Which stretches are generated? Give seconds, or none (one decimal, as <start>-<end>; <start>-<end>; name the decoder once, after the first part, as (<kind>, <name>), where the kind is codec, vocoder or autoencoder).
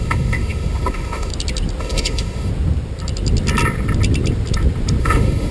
0.0-1.3 (autoencoder, DAC-VAE); 1.8-2.5; 5.0-5.5